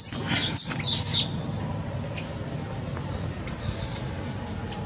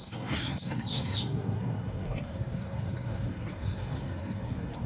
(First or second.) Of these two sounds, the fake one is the second